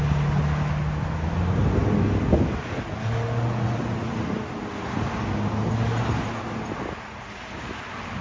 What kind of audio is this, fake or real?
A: real